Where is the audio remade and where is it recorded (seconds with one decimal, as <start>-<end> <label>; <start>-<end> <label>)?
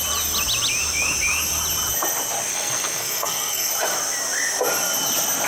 0.0-2.5 recorded; 2.5-3.7 remade; 3.7-5.5 recorded